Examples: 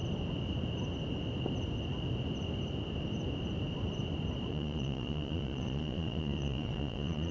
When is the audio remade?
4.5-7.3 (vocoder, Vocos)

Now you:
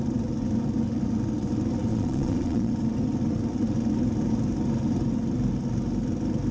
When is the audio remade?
1.9-2.7 (vocoder, Vocos)

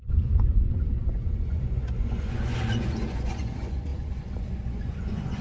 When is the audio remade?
0.0-5.4 (vocoder, Vocos)

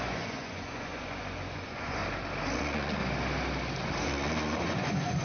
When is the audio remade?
0.0-2.0 (vocoder, Vocos); 2.6-3.0; 4.0-5.2

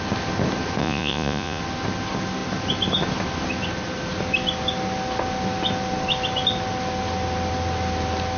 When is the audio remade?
0.8-1.6 (vocoder, Vocos)

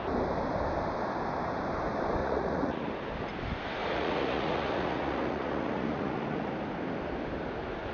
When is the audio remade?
2.2-2.9 (vocoder, Vocos); 3.8-6.5

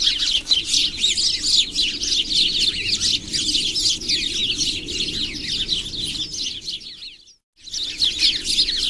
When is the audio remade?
none

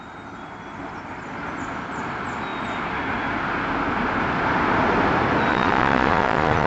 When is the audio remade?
5.5-6.7 (vocoder, Vocos)